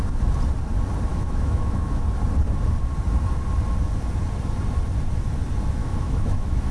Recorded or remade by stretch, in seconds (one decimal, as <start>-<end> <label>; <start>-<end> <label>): 0.0-1.1 recorded; 1.1-2.0 remade; 2.0-5.8 recorded; 5.8-6.7 remade